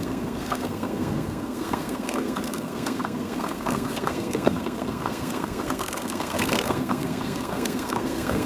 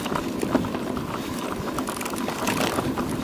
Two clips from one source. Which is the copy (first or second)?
first